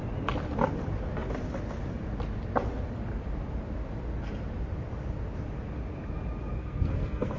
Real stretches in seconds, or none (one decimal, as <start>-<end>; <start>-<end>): 0.0-6.6